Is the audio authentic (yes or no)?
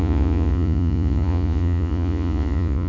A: no